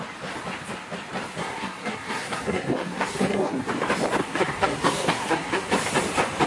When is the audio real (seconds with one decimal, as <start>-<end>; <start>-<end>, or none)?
0.0-1.4; 3.7-4.2; 5.7-6.5